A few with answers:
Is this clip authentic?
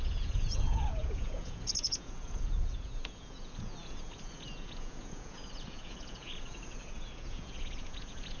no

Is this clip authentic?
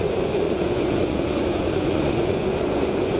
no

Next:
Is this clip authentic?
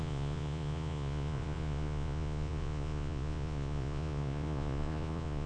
no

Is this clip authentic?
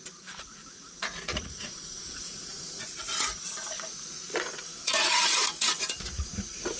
no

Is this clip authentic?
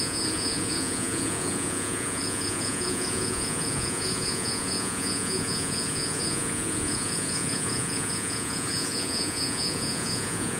no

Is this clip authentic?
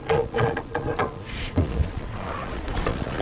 no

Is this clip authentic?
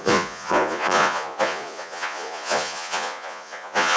no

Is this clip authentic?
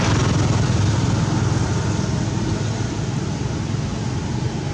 yes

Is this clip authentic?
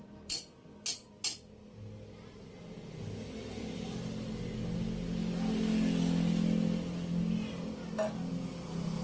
yes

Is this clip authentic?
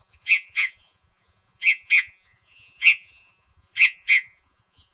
no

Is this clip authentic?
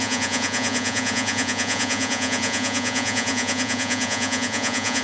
no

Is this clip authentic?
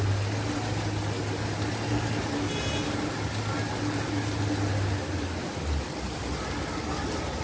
yes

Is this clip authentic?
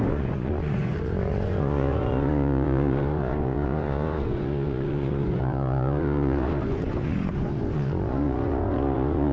no